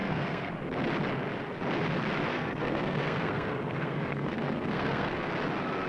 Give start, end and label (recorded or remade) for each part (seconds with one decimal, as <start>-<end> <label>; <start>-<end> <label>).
0.0-0.5 remade; 0.5-2.3 recorded; 2.3-5.3 remade; 5.3-5.9 recorded